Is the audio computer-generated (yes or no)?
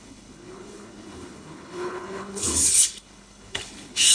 yes